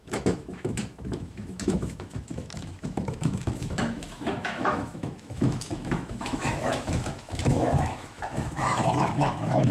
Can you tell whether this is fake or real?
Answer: fake